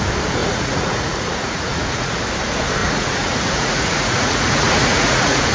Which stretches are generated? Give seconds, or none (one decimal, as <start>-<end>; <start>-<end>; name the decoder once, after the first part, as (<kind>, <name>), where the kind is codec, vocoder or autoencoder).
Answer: 0.4-2.2 (vocoder, Vocos); 2.8-5.5